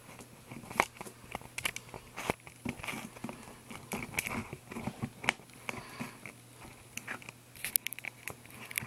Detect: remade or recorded recorded